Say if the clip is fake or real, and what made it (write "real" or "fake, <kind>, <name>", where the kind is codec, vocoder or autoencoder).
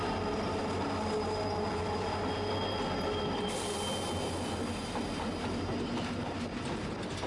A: real